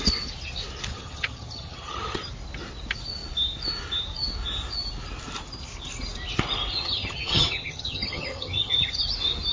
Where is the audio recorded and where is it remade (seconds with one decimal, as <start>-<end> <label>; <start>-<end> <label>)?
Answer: 0.0-0.9 recorded; 0.9-2.3 remade; 2.3-6.7 recorded; 6.7-9.0 remade; 9.0-9.5 recorded